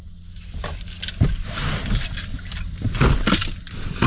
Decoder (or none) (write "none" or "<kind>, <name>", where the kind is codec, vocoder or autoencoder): vocoder, BigVGAN v2